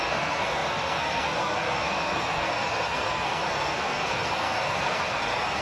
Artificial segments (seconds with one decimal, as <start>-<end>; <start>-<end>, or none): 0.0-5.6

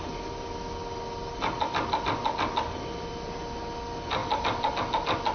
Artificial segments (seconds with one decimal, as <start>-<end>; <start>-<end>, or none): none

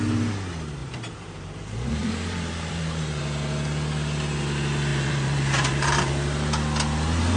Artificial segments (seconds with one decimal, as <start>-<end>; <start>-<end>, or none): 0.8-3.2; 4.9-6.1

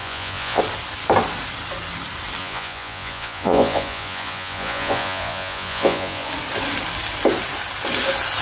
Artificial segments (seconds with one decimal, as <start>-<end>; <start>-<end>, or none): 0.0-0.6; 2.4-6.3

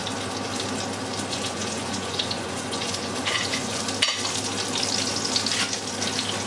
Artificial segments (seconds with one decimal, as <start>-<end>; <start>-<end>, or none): 1.3-3.8